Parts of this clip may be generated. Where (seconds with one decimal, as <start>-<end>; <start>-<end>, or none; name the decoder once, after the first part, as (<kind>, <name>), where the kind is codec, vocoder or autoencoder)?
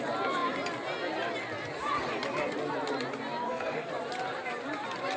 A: 3.4-3.9 (codec, SNAC)